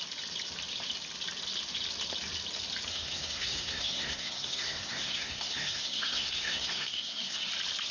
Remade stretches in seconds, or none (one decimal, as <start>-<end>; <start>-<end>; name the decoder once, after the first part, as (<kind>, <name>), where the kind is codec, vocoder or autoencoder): 2.9-7.5 (codec, SNAC)